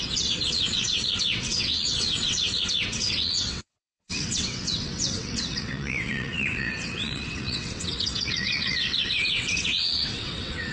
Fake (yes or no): yes